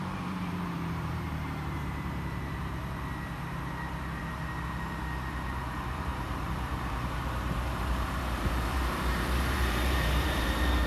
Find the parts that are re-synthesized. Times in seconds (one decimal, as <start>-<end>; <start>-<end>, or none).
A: 0.0-2.8; 5.3-10.9